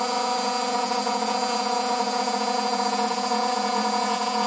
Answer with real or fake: fake